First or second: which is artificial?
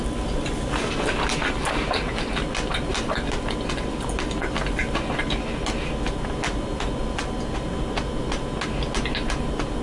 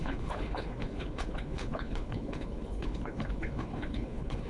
second